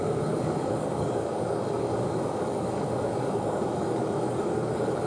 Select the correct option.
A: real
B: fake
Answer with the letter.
B